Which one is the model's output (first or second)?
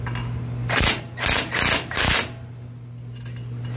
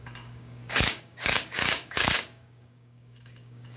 second